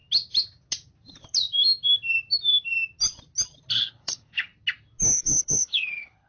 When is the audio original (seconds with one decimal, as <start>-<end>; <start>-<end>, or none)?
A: 0.0-3.8; 4.5-5.2